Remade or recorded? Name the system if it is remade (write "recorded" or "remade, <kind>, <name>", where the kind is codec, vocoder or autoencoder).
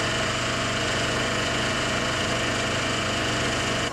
remade, vocoder, Vocos